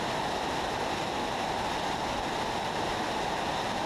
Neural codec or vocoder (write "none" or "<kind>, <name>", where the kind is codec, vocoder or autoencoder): none